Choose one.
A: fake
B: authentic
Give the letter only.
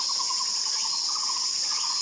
B